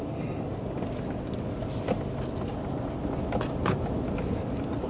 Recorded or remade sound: recorded